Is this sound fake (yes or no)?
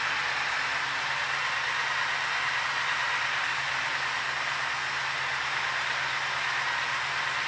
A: no